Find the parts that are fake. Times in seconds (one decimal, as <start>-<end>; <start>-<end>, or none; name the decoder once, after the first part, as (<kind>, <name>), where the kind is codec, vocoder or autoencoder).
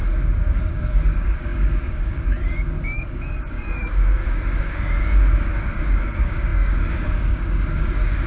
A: 0.0-8.3 (codec, DAC)